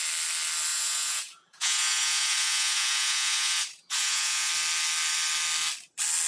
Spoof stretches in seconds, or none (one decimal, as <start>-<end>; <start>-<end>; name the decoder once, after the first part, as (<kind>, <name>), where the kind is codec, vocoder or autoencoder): 0.7-4.5 (vocoder, Vocos)